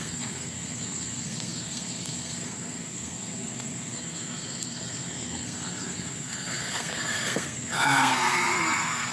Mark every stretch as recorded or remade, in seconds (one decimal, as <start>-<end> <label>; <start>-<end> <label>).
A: 0.0-9.1 remade